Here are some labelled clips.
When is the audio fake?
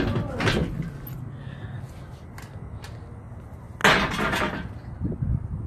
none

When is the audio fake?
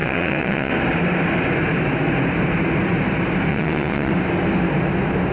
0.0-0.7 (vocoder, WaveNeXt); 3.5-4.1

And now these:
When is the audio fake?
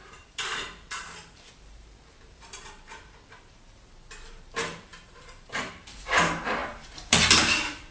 0.0-7.9 (vocoder, BigVGAN v2)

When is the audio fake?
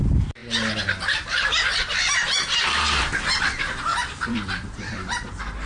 0.4-1.0 (vocoder, BigVGAN v2); 3.9-5.3